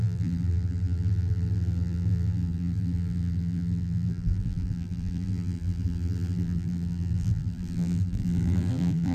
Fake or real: fake